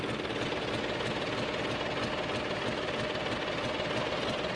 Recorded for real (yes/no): yes